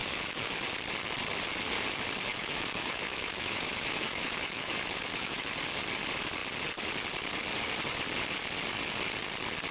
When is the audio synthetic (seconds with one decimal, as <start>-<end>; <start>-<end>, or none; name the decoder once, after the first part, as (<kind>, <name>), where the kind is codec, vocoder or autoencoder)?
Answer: 0.0-0.6 (autoencoder, DAC-VAE); 2.3-5.5